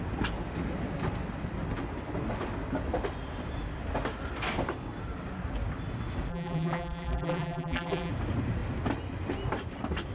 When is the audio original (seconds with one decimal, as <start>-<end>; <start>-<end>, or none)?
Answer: 0.0-6.3; 8.1-10.1